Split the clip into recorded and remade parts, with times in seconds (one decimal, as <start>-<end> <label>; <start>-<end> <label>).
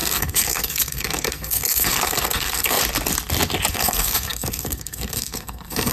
0.0-2.8 remade; 2.8-3.7 recorded; 3.7-5.9 remade